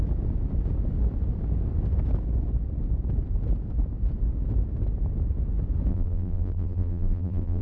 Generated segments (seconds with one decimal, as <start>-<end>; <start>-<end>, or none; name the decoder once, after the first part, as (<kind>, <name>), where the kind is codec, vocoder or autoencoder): 5.9-7.6 (vocoder, BigVGAN v2)

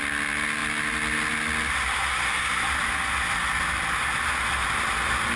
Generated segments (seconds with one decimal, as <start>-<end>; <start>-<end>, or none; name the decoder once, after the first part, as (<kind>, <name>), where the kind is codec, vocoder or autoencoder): none

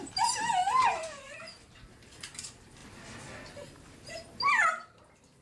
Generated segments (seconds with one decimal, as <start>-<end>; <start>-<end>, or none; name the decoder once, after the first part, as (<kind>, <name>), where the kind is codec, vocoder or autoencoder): none

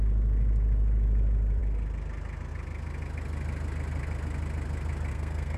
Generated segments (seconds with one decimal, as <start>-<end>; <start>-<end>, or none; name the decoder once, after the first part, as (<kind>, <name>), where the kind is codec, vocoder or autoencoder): 5.1-5.6 (codec, SNAC)

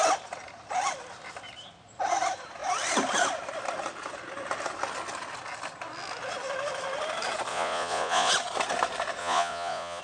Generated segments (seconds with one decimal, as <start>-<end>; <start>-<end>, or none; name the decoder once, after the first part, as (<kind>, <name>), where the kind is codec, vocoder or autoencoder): 7.5-8.3 (vocoder, Vocos); 9.2-10.0

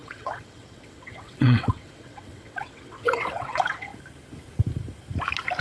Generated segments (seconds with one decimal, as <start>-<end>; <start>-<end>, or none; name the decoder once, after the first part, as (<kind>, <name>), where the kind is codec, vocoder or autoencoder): 0.0-3.9 (vocoder, WaveNeXt)